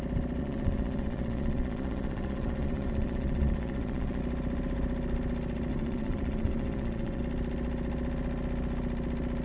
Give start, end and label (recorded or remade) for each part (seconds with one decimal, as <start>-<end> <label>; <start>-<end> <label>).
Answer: 0.0-0.4 recorded; 0.4-4.2 remade; 4.2-5.7 recorded; 5.7-7.2 remade; 7.2-9.4 recorded

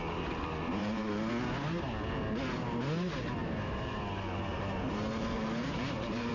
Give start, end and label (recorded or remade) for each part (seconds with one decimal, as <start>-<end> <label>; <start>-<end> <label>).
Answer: 0.0-0.8 recorded; 0.8-1.3 remade; 1.3-3.4 recorded; 3.4-3.9 remade; 3.9-4.5 recorded; 4.5-6.3 remade

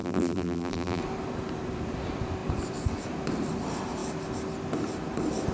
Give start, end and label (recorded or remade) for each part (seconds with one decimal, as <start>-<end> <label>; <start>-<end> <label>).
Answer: 0.0-1.0 remade; 1.0-5.5 recorded

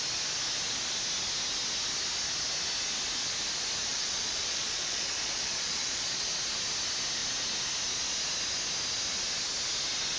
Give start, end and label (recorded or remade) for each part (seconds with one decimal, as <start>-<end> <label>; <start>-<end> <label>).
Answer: 0.0-3.9 recorded; 3.9-6.3 remade; 6.3-10.2 recorded

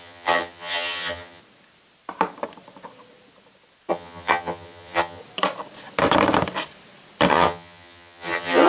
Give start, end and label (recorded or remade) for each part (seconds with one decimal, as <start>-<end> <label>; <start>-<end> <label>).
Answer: 0.0-1.4 remade; 1.4-3.9 recorded; 3.9-5.2 remade; 5.2-7.3 recorded; 7.3-8.7 remade

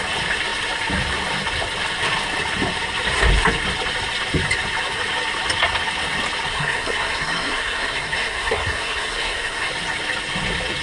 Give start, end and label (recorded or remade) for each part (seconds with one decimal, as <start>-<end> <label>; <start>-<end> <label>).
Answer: 0.0-6.5 recorded; 6.5-9.7 remade; 9.7-10.8 recorded

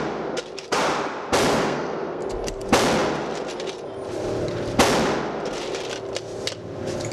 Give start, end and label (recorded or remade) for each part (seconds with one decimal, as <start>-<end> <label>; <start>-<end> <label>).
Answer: 0.0-1.5 recorded; 1.5-2.2 remade; 2.2-7.1 recorded